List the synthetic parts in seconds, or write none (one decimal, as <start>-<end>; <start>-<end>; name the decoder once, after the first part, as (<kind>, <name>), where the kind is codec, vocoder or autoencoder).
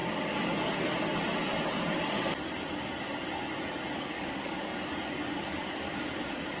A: 4.0-4.7 (codec, DAC); 5.4-6.6